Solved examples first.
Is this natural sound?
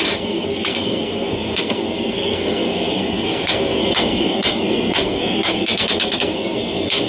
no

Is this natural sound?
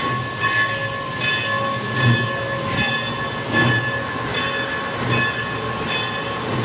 yes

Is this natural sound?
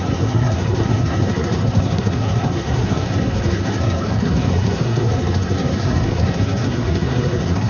no